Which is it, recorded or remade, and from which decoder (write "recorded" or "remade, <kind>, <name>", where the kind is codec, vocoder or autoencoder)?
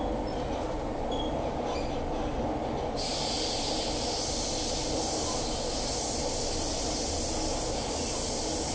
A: recorded